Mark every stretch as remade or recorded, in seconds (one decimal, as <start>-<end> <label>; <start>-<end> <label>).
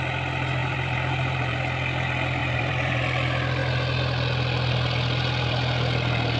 0.0-0.6 recorded; 0.6-1.6 remade; 1.6-2.4 recorded; 2.4-3.0 remade; 3.0-6.4 recorded